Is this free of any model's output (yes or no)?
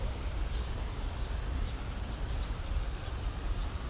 no